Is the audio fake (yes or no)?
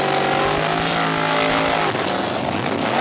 no